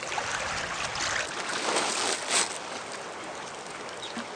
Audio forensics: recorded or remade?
recorded